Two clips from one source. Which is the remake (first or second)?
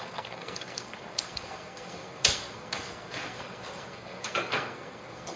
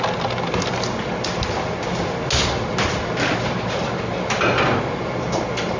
first